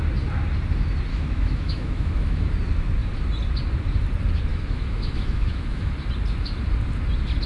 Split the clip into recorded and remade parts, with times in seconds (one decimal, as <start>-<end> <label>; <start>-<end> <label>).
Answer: 0.0-1.1 recorded; 1.1-2.5 remade; 2.5-4.5 recorded; 4.5-5.9 remade; 5.9-7.5 recorded

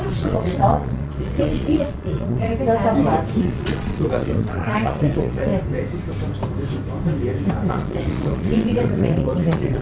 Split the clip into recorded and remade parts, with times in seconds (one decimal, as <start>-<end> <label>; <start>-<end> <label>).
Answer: 0.0-2.5 remade; 2.5-3.4 recorded; 3.4-5.5 remade; 5.5-7.7 recorded; 7.7-9.8 remade